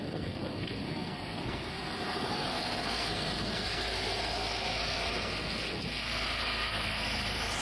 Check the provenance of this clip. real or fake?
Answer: fake